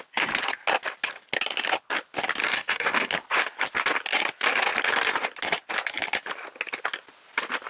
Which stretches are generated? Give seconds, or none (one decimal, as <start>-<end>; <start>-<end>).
2.4-3.1

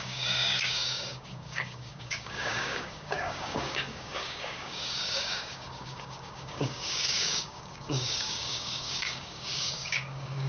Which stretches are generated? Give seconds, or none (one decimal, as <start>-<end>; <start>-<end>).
0.0-10.5